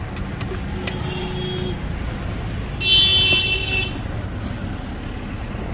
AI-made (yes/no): no